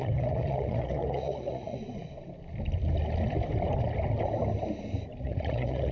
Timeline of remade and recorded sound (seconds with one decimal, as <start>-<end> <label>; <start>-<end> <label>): 0.0-1.8 remade; 1.8-5.2 recorded; 5.2-5.9 remade